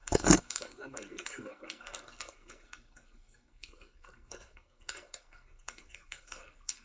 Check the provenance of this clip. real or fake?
fake